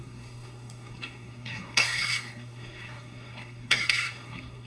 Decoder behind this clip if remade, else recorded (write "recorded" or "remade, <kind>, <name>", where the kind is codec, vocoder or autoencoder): remade, codec, SNAC